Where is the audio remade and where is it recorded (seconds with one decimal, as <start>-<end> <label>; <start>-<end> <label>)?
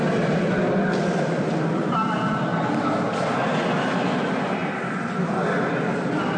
0.0-6.4 recorded